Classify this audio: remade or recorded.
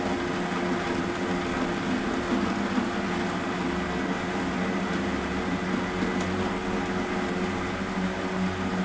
recorded